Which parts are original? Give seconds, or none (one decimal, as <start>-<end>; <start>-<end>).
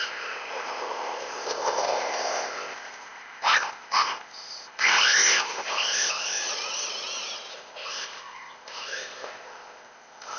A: 6.4-7.5